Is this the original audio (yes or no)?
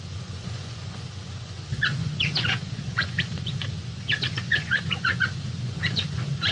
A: no